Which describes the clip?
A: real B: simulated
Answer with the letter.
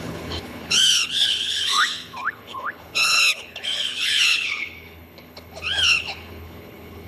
B